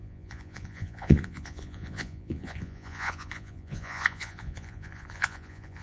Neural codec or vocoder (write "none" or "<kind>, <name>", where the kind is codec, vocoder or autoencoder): vocoder, Vocos